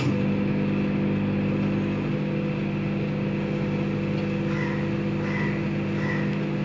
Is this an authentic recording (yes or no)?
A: yes